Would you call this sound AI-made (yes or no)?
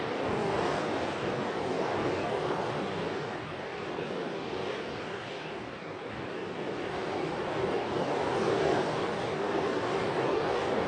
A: yes